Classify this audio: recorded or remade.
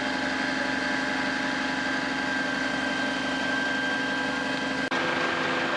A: recorded